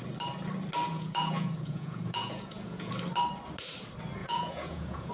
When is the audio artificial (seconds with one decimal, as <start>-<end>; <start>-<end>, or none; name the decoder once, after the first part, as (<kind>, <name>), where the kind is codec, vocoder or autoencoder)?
0.9-2.9 (vocoder, Vocos); 4.2-5.1